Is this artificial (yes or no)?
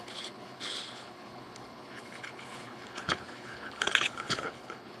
yes